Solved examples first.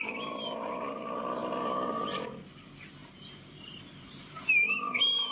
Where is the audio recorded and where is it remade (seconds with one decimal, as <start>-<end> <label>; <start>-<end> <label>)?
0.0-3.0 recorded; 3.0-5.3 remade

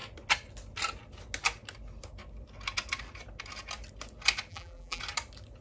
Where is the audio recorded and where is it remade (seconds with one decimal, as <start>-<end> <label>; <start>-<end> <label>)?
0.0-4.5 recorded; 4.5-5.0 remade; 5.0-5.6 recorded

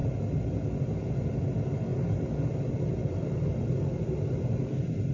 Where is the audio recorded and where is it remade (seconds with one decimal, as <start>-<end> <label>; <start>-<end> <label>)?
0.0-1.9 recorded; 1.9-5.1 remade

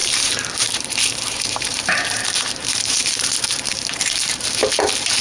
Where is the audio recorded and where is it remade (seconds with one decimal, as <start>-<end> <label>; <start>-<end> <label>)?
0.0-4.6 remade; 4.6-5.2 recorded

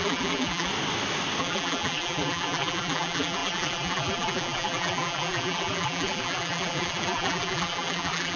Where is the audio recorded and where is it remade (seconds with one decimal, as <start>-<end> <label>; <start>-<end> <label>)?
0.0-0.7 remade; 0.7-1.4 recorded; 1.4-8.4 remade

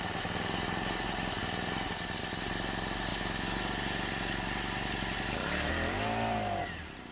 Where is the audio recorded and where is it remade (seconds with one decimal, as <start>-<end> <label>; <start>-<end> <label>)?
0.0-7.1 recorded